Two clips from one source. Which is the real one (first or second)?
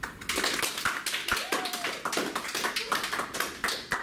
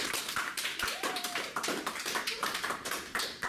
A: first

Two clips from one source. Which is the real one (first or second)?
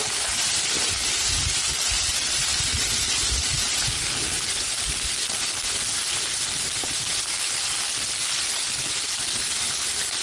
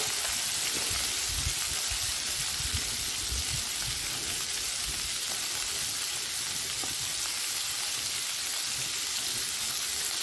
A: second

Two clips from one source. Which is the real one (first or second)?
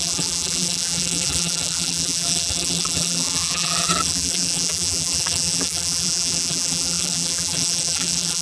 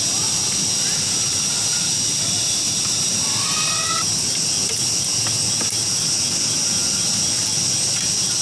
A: second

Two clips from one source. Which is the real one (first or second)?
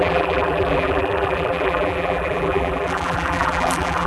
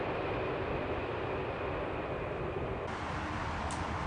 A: second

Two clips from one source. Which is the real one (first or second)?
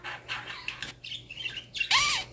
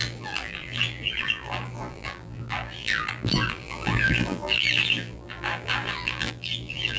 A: first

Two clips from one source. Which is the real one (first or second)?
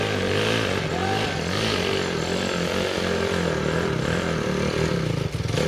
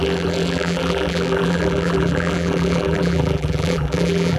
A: first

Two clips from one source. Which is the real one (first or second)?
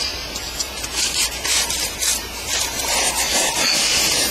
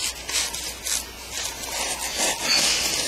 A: second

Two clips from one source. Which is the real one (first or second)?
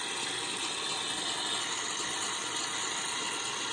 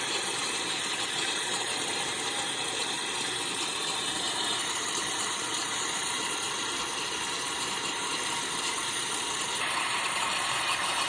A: first